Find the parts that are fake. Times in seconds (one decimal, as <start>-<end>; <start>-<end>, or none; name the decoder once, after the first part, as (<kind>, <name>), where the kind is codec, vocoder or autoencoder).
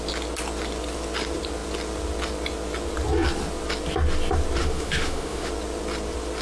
4.6-5.5 (autoencoder, DAC-VAE)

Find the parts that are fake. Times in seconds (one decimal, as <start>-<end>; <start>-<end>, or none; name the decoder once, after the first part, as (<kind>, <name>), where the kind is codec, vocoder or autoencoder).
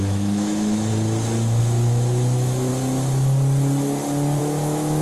0.0-0.9 (autoencoder, DAC-VAE); 1.6-2.7; 4.4-5.0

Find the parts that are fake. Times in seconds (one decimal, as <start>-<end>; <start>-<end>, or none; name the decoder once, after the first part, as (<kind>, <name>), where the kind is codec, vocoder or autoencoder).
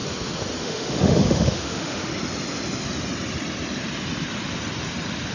0.6-2.1 (autoencoder, DAC-VAE)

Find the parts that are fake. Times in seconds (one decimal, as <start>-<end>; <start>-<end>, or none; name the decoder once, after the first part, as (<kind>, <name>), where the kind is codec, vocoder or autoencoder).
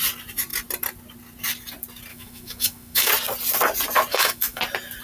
2.1-3.1 (autoencoder, DAC-VAE); 4.1-4.6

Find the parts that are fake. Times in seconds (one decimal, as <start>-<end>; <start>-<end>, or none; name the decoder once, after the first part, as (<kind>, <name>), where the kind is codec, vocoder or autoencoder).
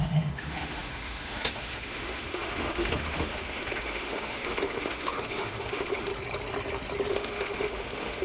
0.0-6.1 (autoencoder, DAC-VAE); 7.1-8.2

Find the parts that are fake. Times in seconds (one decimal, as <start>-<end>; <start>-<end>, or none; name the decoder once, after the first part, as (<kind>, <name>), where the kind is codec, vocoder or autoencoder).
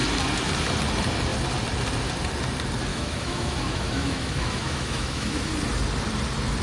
2.9-5.5 (autoencoder, DAC-VAE)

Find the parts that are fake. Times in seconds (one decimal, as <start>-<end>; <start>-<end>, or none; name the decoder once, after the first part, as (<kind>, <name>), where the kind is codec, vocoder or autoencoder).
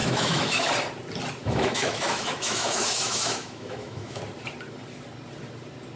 0.0-0.7 (autoencoder, DAC-VAE); 1.4-4.2